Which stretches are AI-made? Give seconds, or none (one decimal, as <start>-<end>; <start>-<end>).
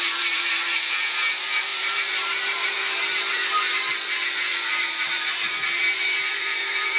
0.0-7.0